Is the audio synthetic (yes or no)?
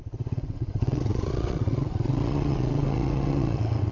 yes